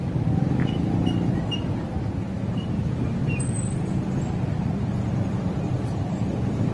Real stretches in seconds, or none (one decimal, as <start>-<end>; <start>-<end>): 0.0-6.7